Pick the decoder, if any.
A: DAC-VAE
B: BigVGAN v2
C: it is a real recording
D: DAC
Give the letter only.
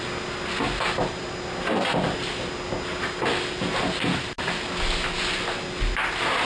C